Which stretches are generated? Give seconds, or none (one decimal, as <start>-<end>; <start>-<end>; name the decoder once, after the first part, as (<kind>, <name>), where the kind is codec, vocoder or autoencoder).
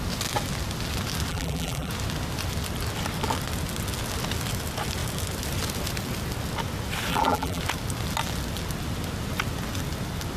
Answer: 1.3-1.9 (vocoder, BigVGAN v2); 7.1-7.6